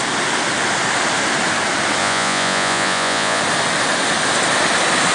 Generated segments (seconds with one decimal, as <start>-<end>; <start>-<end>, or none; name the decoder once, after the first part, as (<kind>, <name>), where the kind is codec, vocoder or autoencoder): 2.0-3.4 (vocoder, Vocos)